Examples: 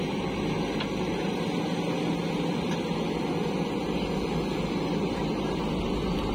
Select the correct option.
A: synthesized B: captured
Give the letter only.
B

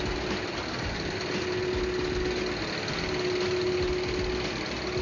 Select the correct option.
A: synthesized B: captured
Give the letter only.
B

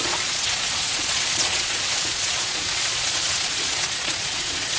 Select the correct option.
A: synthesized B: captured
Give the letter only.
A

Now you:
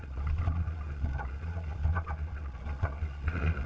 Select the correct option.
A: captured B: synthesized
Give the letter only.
B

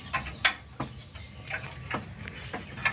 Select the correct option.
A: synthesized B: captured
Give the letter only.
B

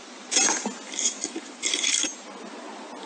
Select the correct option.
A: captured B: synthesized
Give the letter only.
A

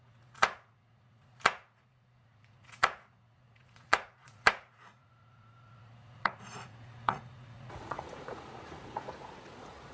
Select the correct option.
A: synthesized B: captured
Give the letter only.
A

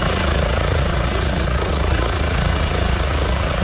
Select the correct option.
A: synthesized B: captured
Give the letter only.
A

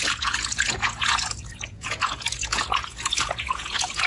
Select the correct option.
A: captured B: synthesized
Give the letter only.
B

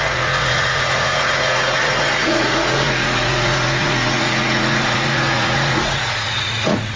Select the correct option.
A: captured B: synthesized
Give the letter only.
B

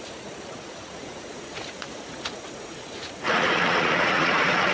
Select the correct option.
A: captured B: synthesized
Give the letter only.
B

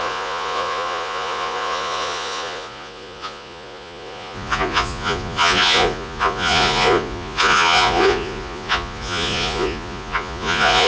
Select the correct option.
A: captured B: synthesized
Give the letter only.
B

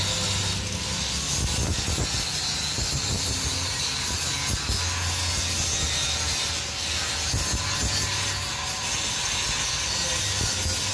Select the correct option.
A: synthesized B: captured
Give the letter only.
B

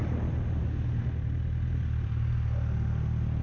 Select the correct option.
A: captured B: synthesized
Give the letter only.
A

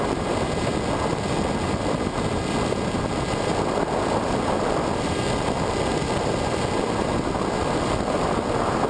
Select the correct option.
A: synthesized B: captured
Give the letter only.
B